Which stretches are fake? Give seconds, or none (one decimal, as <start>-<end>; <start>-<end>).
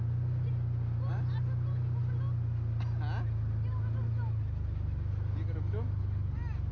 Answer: none